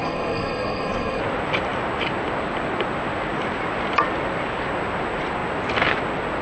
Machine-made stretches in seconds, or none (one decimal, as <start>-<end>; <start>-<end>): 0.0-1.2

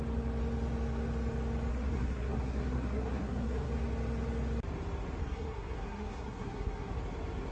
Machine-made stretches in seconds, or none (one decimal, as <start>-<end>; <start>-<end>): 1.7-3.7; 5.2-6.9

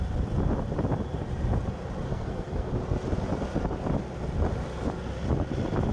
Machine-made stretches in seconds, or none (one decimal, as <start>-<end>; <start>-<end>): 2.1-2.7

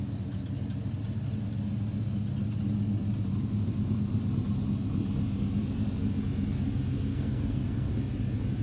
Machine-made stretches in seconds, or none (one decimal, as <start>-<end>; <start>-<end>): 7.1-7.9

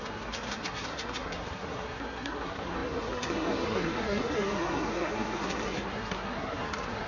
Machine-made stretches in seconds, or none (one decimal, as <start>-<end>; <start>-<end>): 0.0-7.1

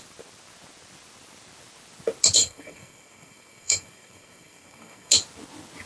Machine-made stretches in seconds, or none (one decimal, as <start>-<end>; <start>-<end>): 2.4-5.1

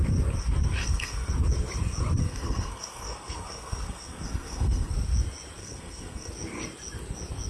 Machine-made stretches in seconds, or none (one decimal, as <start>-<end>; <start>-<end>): 0.8-1.3; 2.2-4.9; 5.6-6.3

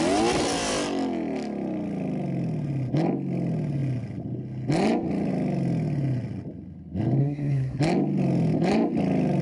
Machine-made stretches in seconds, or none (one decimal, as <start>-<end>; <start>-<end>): 7.2-7.8